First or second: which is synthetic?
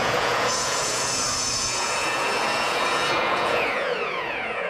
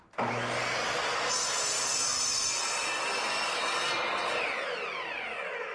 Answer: first